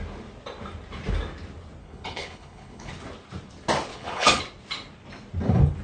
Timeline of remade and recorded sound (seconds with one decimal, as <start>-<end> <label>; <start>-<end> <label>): 0.0-1.8 recorded; 1.8-2.9 remade; 2.9-3.9 recorded; 3.9-4.4 remade; 4.4-5.8 recorded